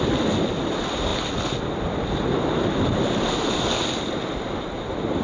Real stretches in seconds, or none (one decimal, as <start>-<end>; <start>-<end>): 0.0-5.2